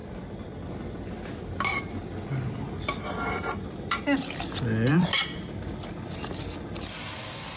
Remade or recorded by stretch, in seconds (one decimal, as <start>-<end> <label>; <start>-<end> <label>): 0.0-4.9 recorded; 4.9-5.8 remade; 5.8-7.6 recorded